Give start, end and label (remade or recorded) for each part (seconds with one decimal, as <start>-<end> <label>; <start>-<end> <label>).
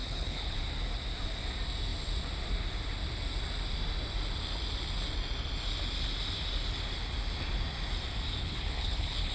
0.0-0.6 remade; 0.6-8.4 recorded; 8.4-9.3 remade